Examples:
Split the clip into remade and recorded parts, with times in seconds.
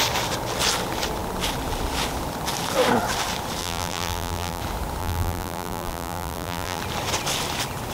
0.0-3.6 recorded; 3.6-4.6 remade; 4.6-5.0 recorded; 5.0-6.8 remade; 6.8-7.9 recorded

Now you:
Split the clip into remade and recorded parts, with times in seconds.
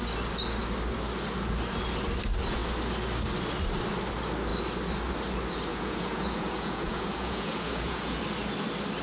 0.0-5.7 recorded; 5.7-8.2 remade; 8.2-9.0 recorded